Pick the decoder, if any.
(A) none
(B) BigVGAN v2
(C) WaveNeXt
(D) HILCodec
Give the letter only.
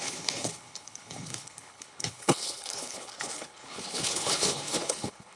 D